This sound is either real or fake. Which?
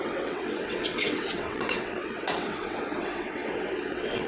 fake